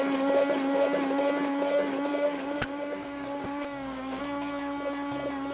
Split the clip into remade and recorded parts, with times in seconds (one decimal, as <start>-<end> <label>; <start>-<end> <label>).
0.0-2.1 recorded; 2.1-4.2 remade; 4.2-5.5 recorded